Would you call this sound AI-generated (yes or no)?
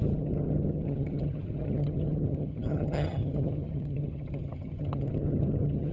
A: yes